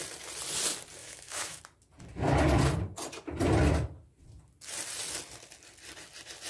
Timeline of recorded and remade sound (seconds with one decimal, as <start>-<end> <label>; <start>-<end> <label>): 0.0-1.0 recorded; 1.0-1.6 remade; 1.6-6.5 recorded